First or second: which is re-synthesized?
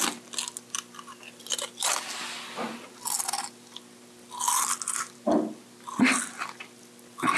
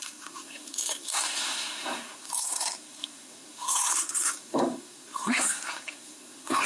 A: second